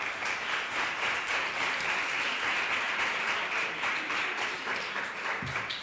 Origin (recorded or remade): recorded